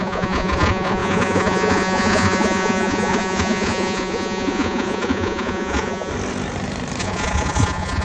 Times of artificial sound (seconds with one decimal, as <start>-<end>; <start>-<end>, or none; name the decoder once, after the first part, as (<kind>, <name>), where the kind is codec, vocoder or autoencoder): 0.0-6.1 (vocoder, Vocos); 7.0-8.0